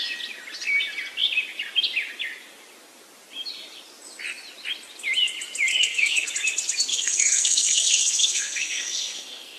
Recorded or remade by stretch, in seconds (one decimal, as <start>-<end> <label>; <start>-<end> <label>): 0.0-5.7 recorded; 5.7-6.3 remade; 6.3-6.9 recorded; 6.9-9.6 remade